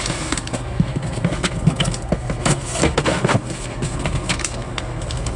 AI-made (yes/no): yes